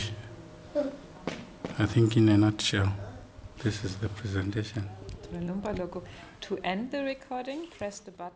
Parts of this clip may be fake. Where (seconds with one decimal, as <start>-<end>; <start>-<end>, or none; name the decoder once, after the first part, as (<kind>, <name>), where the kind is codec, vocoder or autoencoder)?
none